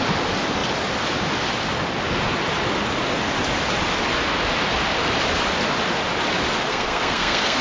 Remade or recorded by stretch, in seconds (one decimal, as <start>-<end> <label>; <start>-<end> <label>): 0.0-6.7 recorded; 6.7-7.6 remade